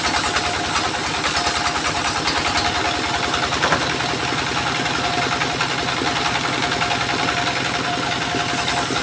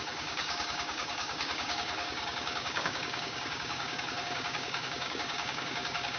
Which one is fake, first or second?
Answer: second